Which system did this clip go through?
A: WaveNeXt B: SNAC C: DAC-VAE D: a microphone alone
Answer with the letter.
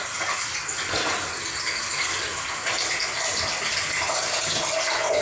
D